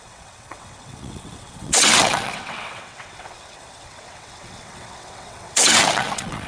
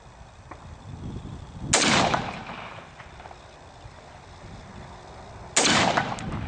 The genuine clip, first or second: second